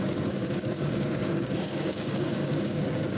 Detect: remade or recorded remade